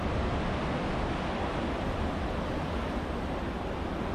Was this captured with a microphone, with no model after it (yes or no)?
yes